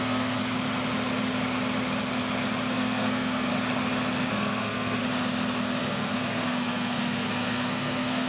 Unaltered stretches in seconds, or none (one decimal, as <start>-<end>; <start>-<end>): 0.4-2.7; 3.5-4.3; 5.0-5.8